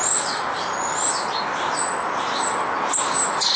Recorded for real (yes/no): yes